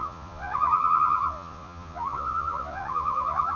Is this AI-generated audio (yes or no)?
yes